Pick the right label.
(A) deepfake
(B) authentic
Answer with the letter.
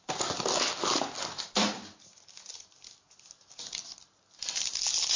B